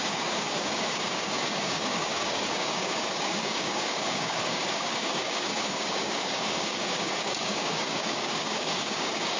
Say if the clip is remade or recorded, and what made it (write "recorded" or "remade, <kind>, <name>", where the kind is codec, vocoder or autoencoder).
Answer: remade, codec, DAC